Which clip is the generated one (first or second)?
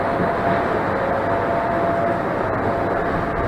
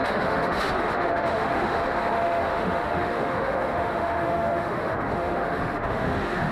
second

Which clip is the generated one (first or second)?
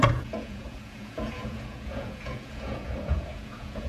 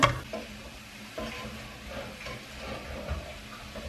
first